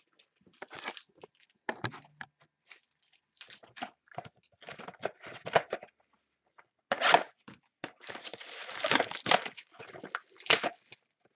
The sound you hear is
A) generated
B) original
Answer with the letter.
B